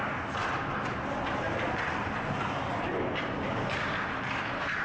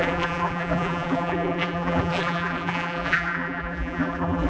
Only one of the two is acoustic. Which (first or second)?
first